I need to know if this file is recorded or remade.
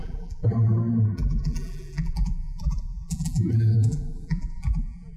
remade